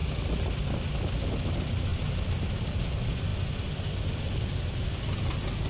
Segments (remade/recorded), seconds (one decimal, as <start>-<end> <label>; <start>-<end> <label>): 0.0-5.7 recorded